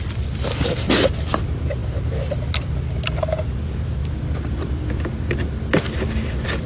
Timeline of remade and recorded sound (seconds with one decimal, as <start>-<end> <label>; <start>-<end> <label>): 0.0-6.7 recorded